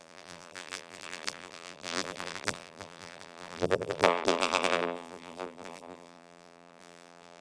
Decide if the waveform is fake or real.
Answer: fake